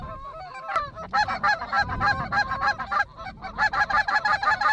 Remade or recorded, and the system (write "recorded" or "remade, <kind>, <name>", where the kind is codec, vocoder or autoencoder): recorded